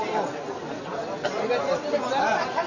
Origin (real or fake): real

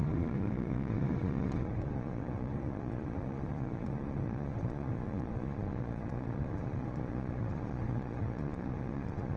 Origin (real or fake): fake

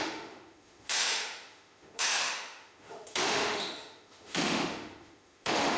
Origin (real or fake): fake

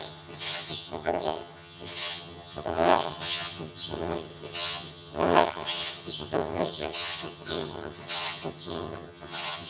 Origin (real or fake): fake